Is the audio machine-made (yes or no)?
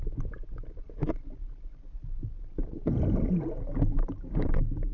no